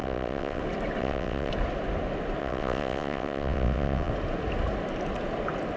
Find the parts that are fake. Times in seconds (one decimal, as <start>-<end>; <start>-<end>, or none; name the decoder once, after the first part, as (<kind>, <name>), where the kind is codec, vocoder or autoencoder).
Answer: 0.0-0.6 (vocoder, WaveNeXt); 1.0-1.5; 2.4-4.1